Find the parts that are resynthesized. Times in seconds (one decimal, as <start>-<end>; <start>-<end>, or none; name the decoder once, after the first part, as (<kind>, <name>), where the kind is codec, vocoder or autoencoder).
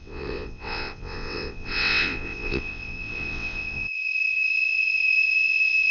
0.0-5.9 (vocoder, WaveNeXt)